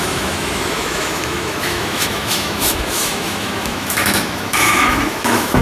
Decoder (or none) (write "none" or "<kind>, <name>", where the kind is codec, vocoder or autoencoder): autoencoder, DAC-VAE